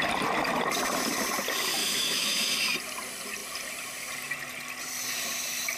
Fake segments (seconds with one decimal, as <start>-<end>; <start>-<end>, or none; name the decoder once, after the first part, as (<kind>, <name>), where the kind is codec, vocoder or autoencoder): 1.8-2.5 (autoencoder, DAC-VAE)